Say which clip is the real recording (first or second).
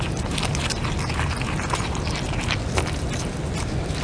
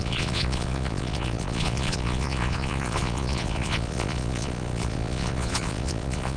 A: first